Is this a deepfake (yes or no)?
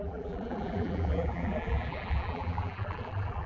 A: yes